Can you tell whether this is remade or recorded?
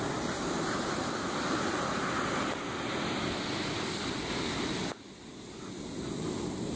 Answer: recorded